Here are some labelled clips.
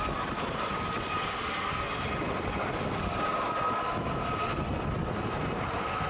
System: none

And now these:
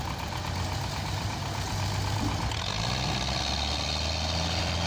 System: vocoder, BigVGAN v2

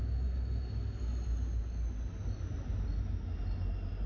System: none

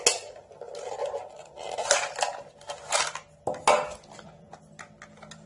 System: none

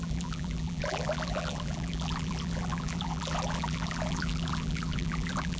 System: vocoder, BigVGAN v2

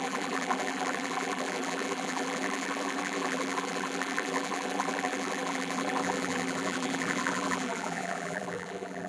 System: vocoder, BigVGAN v2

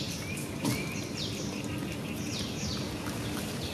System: none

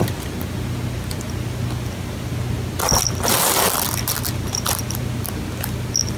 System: none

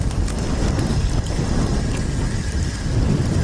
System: none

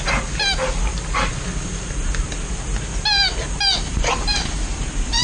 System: none